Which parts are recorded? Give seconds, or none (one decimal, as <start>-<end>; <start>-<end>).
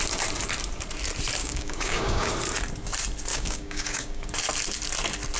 0.0-1.4; 2.3-3.3; 4.3-5.4